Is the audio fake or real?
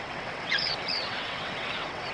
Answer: fake